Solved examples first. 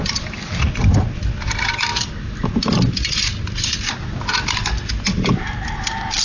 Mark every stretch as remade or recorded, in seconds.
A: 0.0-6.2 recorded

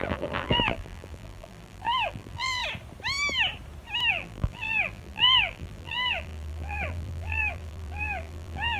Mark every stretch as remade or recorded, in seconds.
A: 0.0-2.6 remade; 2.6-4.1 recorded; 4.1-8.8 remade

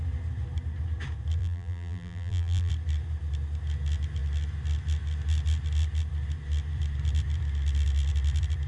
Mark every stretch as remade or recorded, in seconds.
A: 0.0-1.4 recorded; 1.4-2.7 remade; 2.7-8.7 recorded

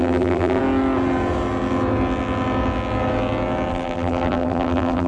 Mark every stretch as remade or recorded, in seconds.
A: 0.0-0.6 remade; 0.6-3.7 recorded; 3.7-5.1 remade

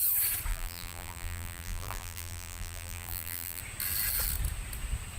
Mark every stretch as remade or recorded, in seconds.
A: 0.0-0.5 recorded; 0.5-3.6 remade; 3.6-5.2 recorded

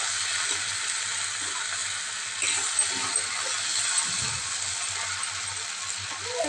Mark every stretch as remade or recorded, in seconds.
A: 0.0-6.5 recorded

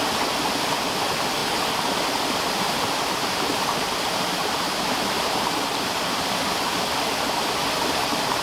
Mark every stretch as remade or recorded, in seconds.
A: 0.0-1.4 recorded; 1.4-6.4 remade; 6.4-8.4 recorded

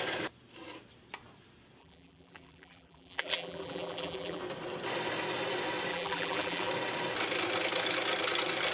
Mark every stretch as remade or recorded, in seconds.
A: 0.0-1.8 recorded; 1.8-4.4 remade; 4.4-5.9 recorded; 5.9-6.7 remade; 6.7-8.7 recorded